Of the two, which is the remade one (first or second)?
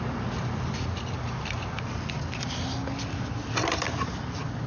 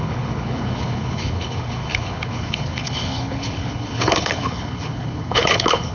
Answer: second